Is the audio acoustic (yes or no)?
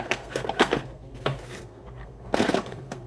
no